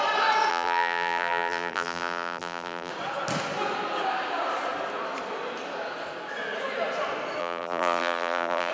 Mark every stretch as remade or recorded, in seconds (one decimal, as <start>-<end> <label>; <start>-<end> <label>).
0.0-0.5 recorded; 0.5-2.9 remade; 2.9-7.4 recorded; 7.4-8.7 remade